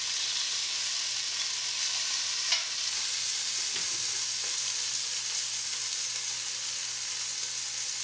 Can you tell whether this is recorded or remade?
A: recorded